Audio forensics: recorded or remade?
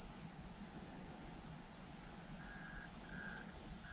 remade